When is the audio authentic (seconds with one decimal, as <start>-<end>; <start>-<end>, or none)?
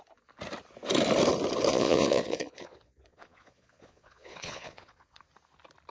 0.0-1.7; 5.2-5.9